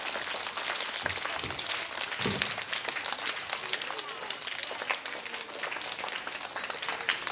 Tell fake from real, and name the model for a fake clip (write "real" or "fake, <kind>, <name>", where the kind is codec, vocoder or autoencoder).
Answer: real